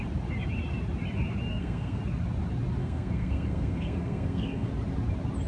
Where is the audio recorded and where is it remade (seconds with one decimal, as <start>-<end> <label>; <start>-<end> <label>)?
0.0-1.5 recorded; 1.5-2.0 remade; 2.0-2.8 recorded; 2.8-4.7 remade; 4.7-5.5 recorded